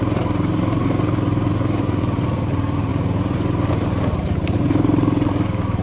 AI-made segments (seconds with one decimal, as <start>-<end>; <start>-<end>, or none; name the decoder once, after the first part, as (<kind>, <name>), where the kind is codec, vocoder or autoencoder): 0.0-2.9 (vocoder, BigVGAN v2); 3.7-5.8